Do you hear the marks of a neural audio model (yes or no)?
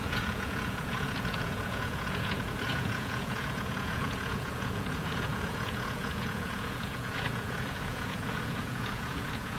yes